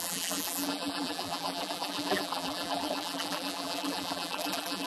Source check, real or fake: fake